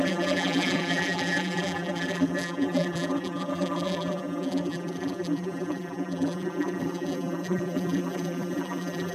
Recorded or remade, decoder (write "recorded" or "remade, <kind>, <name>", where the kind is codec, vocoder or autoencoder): remade, vocoder, BigVGAN v2